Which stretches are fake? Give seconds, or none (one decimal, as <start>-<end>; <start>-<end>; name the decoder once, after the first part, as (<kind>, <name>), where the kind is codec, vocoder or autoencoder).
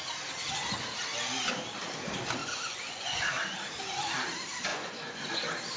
2.4-3.2 (vocoder, Vocos); 4.7-5.3